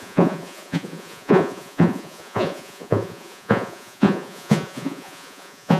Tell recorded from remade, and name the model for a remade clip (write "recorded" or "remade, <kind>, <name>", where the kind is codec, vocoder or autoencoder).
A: remade, vocoder, Vocos